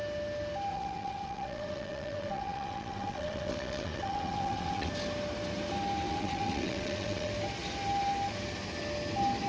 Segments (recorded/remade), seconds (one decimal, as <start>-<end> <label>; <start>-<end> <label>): 0.0-0.7 recorded; 0.7-4.9 remade; 4.9-6.1 recorded; 6.1-7.3 remade; 7.3-9.5 recorded